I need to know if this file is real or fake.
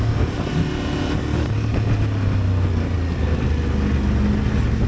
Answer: real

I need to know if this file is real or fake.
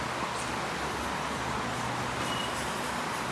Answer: real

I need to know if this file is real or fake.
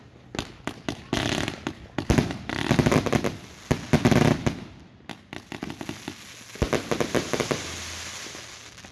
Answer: real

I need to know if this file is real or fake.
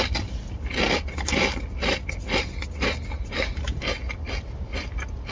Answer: real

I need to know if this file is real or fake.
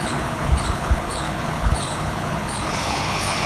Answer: fake